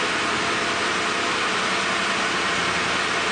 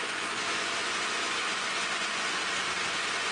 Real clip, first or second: first